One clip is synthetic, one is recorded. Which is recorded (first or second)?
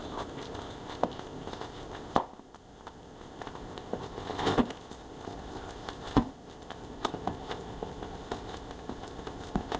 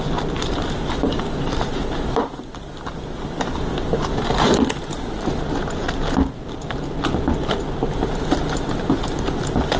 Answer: second